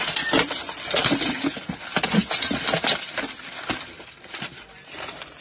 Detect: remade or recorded recorded